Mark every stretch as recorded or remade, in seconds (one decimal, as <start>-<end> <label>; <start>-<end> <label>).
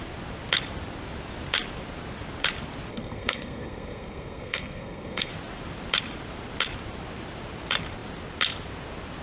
0.0-2.9 recorded; 2.9-5.3 remade; 5.3-9.2 recorded